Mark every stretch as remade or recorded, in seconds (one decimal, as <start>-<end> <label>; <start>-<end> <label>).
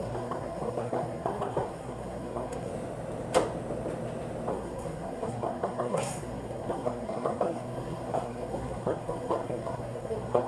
0.0-2.7 remade; 2.7-4.5 recorded; 4.5-10.5 remade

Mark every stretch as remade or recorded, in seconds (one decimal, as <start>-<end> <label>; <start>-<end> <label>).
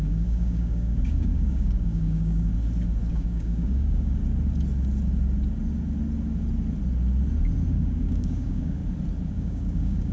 0.0-2.5 remade; 2.5-3.1 recorded; 3.1-4.2 remade; 4.2-7.7 recorded; 7.7-8.8 remade; 8.8-9.3 recorded; 9.3-10.1 remade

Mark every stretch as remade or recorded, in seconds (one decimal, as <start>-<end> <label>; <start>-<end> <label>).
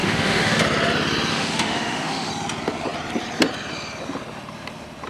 0.0-0.6 remade; 0.6-1.3 recorded; 1.3-2.3 remade; 2.3-5.1 recorded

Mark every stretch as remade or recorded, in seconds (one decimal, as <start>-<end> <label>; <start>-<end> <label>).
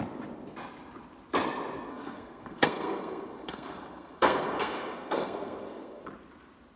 0.0-1.9 recorded; 1.9-6.0 remade; 6.0-6.8 recorded